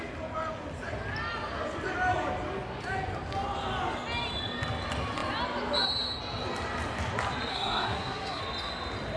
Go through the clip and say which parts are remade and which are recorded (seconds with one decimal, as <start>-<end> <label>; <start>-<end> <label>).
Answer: 0.0-7.5 recorded; 7.5-8.4 remade; 8.4-9.2 recorded

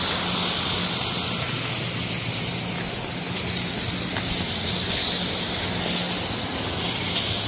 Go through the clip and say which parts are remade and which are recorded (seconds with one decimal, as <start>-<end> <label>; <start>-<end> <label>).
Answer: 0.0-7.5 recorded

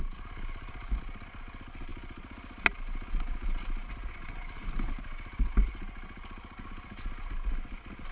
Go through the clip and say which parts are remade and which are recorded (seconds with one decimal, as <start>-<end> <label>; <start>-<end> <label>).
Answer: 0.0-8.1 recorded

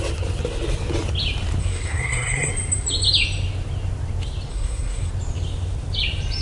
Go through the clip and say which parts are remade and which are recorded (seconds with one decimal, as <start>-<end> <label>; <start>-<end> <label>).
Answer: 0.0-1.6 recorded; 1.6-2.5 remade; 2.5-4.5 recorded; 4.5-5.1 remade; 5.1-6.4 recorded

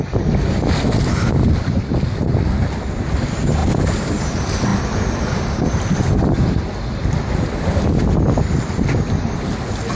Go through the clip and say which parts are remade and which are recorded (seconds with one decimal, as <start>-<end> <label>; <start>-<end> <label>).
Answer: 0.0-10.0 recorded